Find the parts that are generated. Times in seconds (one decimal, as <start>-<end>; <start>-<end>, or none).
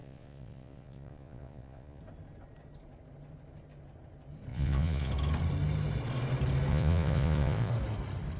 0.0-2.0; 4.5-5.1; 6.7-7.7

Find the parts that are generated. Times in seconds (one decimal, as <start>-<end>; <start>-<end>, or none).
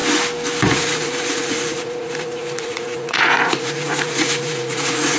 0.7-5.2